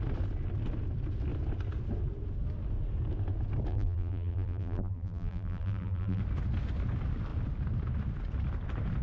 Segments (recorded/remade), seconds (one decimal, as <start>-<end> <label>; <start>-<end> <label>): 0.0-3.7 recorded; 3.7-6.2 remade; 6.2-9.0 recorded